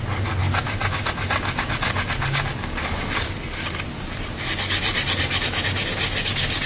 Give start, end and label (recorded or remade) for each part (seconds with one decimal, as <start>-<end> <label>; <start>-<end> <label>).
0.0-6.7 recorded